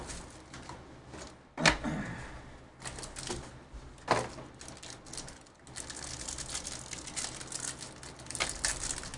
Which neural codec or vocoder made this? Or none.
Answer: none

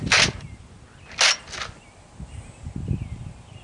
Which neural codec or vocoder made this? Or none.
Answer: none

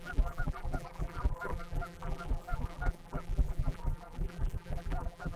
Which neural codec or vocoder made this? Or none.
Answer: vocoder, BigVGAN v2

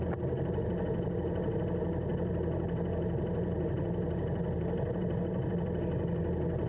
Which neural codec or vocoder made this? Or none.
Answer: none